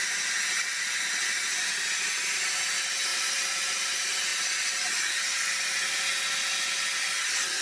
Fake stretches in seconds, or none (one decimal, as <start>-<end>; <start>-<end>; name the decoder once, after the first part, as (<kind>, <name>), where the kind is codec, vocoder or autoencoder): 3.1-3.8 (vocoder, BigVGAN v2)